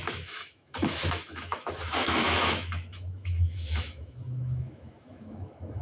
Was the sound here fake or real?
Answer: fake